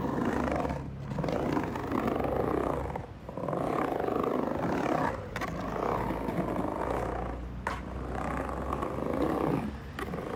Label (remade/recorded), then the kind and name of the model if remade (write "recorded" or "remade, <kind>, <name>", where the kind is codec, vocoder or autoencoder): recorded